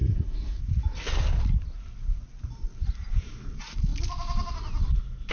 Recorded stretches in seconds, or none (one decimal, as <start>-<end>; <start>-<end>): 0.6-5.3